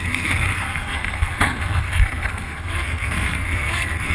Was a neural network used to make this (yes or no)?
yes